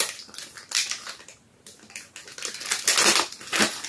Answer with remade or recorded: recorded